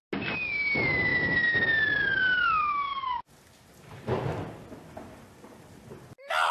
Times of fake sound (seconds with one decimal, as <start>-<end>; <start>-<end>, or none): none

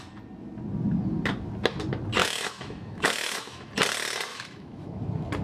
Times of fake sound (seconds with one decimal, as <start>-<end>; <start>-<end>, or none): 2.2-3.7; 4.3-5.0